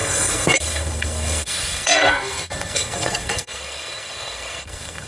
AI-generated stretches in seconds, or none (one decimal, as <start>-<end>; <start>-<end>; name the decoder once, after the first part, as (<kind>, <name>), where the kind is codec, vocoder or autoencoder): 0.0-5.1 (codec, SNAC)

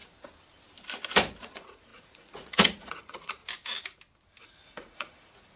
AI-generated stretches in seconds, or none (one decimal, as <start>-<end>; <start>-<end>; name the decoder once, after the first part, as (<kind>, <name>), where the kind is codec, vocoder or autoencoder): 1.5-3.4 (vocoder, Vocos); 4.4-5.6

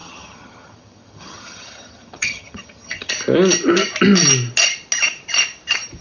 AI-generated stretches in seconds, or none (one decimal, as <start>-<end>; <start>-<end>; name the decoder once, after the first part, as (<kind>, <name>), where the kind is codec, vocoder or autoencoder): 0.0-3.1 (vocoder, HiFi-GAN)

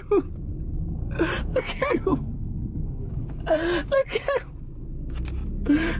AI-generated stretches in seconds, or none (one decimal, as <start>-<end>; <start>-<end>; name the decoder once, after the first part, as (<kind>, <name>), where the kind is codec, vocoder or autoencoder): 1.5-3.1 (codec, SNAC)

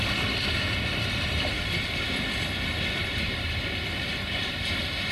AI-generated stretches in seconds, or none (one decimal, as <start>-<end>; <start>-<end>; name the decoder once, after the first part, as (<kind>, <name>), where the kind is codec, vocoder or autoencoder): 0.9-1.5 (vocoder, BigVGAN v2); 3.0-3.6

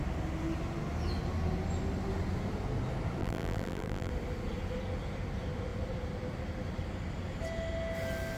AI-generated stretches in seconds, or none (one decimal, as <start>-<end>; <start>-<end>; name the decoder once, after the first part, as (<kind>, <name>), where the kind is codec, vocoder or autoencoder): 3.2-4.1 (vocoder, BigVGAN v2)

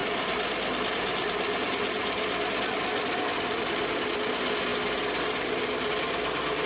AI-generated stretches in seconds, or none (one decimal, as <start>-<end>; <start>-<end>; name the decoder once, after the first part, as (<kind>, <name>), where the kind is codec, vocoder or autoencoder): none

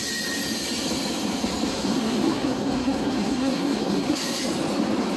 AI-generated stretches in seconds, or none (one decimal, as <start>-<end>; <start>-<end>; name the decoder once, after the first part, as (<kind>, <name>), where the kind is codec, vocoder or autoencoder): 1.7-4.4 (codec, SNAC)